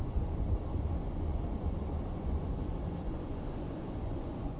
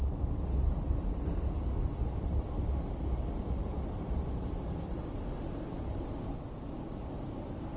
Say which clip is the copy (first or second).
first